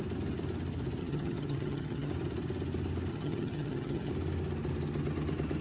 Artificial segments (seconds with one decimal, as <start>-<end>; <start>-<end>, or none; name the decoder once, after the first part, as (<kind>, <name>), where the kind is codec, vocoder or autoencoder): 1.0-2.1 (vocoder, HiFi-GAN); 3.1-4.1